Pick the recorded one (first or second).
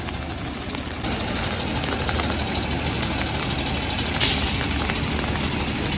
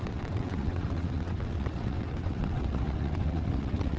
first